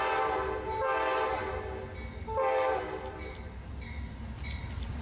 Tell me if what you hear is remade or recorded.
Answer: recorded